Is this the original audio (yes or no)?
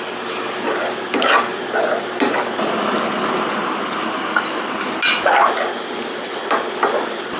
yes